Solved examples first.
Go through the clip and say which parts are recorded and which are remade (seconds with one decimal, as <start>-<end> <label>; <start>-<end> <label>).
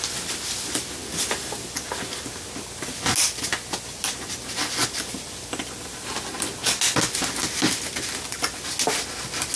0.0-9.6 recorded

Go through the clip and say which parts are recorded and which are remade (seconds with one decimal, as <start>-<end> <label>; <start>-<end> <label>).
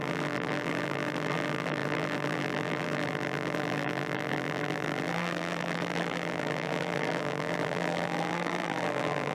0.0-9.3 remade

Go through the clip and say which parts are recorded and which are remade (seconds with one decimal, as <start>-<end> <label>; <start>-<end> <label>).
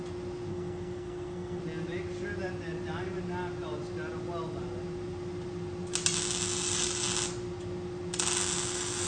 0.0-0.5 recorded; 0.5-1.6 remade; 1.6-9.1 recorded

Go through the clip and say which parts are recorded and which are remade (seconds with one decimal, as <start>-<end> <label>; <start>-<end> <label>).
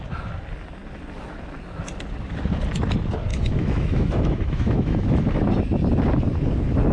0.0-3.3 recorded; 3.3-5.4 remade; 5.4-6.9 recorded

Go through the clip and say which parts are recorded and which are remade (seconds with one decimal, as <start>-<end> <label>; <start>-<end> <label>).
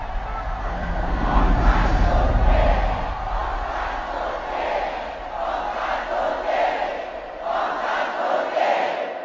0.0-0.6 recorded; 0.6-1.4 remade; 1.4-9.2 recorded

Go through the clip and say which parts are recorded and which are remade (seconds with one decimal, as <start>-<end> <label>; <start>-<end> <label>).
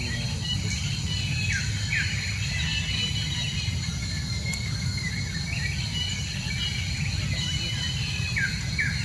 0.0-4.0 recorded; 4.0-5.1 remade; 5.1-9.0 recorded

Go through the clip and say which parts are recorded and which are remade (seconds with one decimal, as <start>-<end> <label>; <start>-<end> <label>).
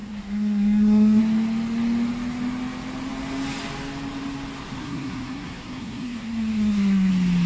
0.0-1.2 remade; 1.2-4.8 recorded; 4.8-7.1 remade; 7.1-7.5 recorded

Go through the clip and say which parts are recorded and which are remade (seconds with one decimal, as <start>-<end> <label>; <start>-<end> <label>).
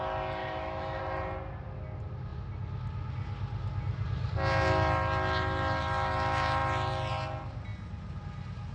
0.0-0.4 recorded; 0.4-1.0 remade; 1.0-8.7 recorded